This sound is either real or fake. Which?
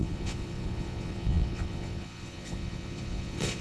fake